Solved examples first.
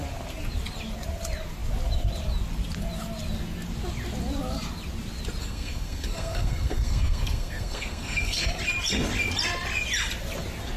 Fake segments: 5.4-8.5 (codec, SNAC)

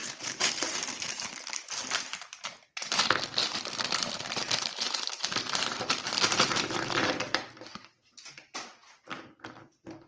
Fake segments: 0.0-3.0 (vocoder, BigVGAN v2); 3.4-8.3

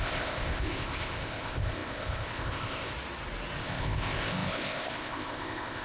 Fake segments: 0.0-2.9 (codec, ZipCodec); 3.6-5.8

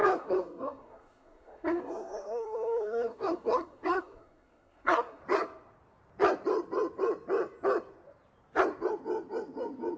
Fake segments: 0.0-5.2 (codec, SNAC)